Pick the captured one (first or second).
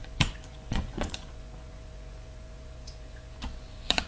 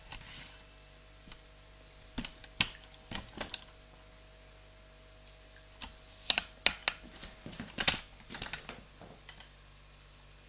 second